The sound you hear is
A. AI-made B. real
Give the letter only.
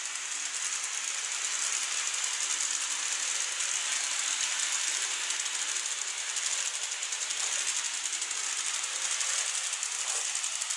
B